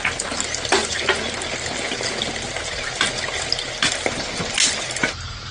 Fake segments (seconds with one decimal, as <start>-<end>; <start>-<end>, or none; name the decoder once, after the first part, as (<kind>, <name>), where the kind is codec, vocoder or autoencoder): none